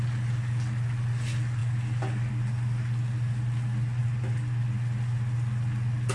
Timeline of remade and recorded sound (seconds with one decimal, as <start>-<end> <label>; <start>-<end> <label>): 0.0-6.1 recorded